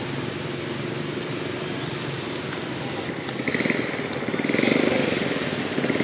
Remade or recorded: recorded